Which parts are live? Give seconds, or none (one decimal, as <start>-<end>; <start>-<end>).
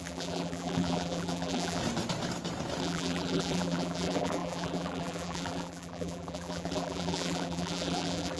1.8-2.8